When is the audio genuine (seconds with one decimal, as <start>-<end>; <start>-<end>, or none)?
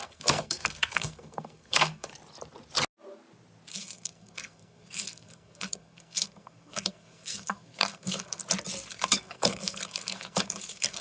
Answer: 2.1-3.7; 8.4-8.9